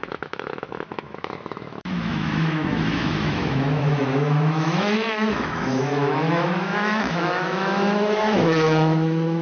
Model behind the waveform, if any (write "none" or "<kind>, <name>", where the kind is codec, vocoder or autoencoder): autoencoder, DAC-VAE